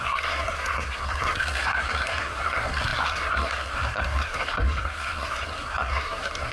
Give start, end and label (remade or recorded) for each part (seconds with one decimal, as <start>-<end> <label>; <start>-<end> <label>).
0.0-6.5 remade